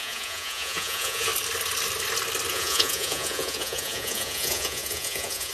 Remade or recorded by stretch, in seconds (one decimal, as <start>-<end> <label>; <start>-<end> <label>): 0.0-1.3 remade; 1.3-2.5 recorded; 2.5-5.5 remade